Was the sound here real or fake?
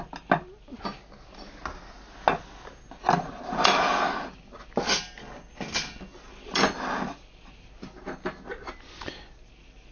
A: real